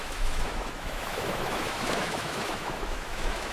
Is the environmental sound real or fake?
fake